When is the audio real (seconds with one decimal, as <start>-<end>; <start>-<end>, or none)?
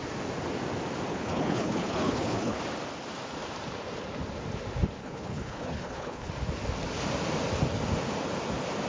0.0-1.1; 2.6-5.0; 6.3-8.9